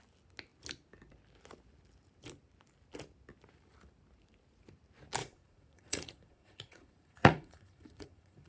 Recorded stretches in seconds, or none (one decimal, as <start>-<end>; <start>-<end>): 0.0-5.2